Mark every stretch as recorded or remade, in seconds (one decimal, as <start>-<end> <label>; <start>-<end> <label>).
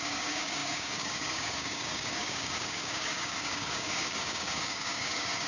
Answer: 0.0-5.5 remade